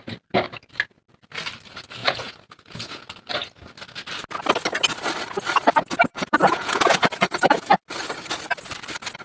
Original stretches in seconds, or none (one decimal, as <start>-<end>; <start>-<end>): 0.0-2.0; 3.0-6.1; 7.8-9.2